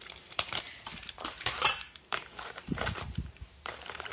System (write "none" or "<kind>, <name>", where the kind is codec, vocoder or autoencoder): vocoder, BigVGAN v2